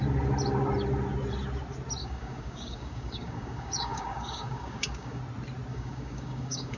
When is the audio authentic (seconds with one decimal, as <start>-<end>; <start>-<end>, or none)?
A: 0.0-2.0; 5.2-5.7